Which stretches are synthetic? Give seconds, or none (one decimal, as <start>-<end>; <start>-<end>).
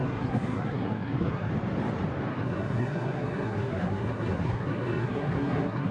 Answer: 0.0-1.5; 2.3-5.9